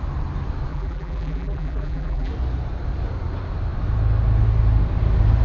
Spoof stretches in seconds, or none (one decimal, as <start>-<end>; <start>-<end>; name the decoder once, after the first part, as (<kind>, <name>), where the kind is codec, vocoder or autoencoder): 0.7-2.3 (vocoder, BigVGAN v2)